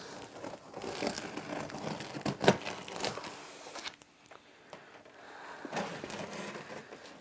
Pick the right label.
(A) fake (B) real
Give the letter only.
B